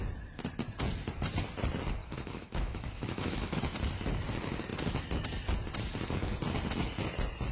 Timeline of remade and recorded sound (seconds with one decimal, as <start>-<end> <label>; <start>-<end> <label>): 0.0-2.0 recorded; 2.0-3.6 remade; 3.6-7.5 recorded